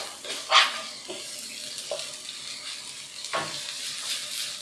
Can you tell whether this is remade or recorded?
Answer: recorded